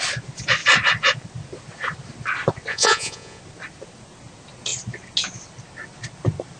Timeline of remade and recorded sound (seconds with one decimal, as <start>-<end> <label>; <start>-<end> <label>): 0.0-2.7 recorded; 2.7-3.4 remade; 3.4-6.6 recorded